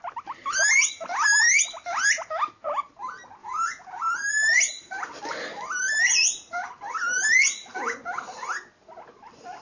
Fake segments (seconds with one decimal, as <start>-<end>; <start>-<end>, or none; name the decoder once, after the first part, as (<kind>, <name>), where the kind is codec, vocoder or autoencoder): 3.4-4.0 (vocoder, Vocos)